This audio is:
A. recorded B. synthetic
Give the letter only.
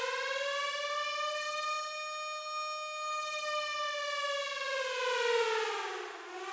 A